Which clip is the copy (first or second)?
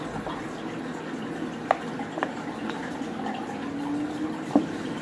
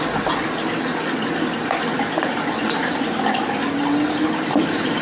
second